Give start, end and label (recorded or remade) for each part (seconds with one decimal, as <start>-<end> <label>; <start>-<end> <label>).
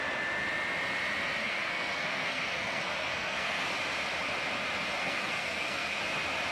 0.0-1.4 recorded; 1.4-3.7 remade; 3.7-5.0 recorded; 5.0-6.0 remade; 6.0-6.5 recorded